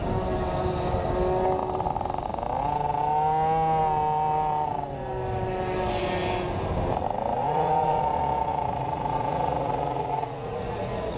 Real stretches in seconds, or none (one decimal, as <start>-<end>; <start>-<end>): 0.0-7.3